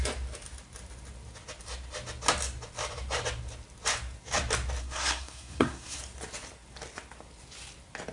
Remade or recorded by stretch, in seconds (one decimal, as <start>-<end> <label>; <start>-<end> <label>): 0.0-4.8 recorded; 4.8-6.0 remade; 6.0-8.1 recorded